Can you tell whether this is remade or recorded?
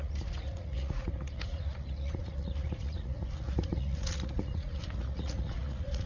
remade